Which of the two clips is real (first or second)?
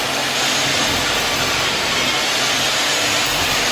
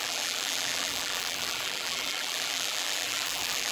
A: first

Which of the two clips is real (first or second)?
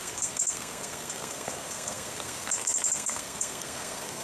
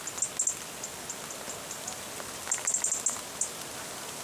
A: second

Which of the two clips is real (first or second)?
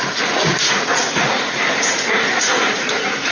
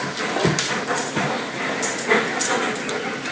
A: second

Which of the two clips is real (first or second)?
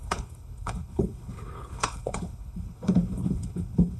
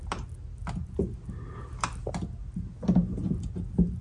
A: second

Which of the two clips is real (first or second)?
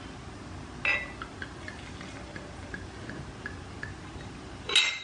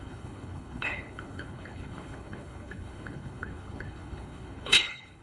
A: first